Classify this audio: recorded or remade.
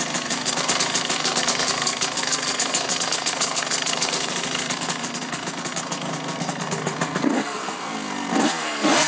remade